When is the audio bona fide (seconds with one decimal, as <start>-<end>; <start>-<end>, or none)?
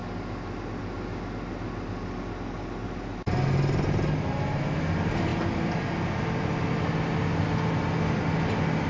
0.0-8.9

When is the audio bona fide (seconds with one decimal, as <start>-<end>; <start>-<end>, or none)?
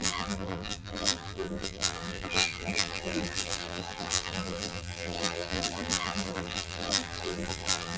none